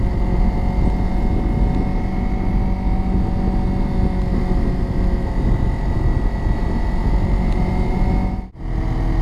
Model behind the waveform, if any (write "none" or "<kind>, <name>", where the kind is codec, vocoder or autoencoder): none